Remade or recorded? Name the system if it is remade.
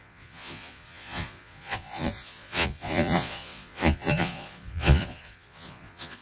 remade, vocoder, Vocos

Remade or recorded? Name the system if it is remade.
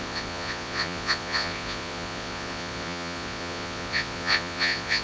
remade, vocoder, Vocos